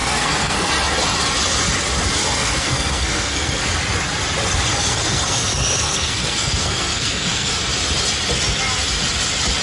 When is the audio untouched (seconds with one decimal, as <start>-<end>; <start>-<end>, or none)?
0.7-2.2; 3.7-4.7; 7.6-9.6